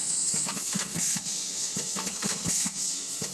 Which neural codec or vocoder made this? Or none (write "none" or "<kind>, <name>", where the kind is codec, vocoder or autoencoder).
codec, SNAC